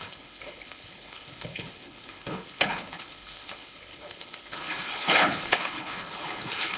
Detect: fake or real fake